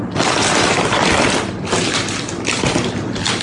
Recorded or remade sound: remade